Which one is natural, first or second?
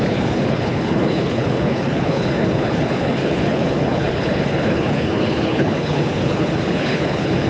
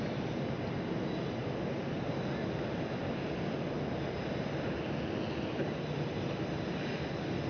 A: second